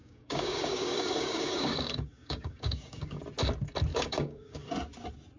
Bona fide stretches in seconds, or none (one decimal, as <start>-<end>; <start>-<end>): 3.2-3.9; 4.7-5.4